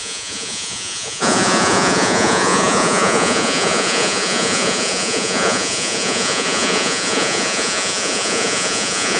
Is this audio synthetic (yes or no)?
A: yes